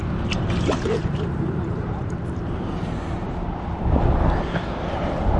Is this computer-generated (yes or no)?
yes